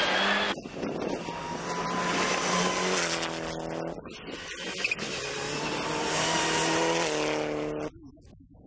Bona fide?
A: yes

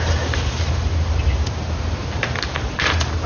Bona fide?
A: yes